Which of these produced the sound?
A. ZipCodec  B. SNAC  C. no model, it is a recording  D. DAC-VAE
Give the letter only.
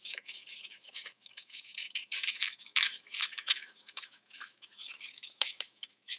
D